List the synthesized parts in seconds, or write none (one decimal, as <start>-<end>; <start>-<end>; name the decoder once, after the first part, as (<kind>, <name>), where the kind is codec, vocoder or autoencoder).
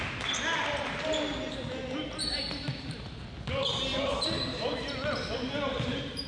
3.9-6.3 (vocoder, BigVGAN v2)